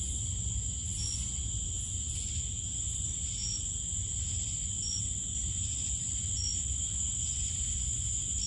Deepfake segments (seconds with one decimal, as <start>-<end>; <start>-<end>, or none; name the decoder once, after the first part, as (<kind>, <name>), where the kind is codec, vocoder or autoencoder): none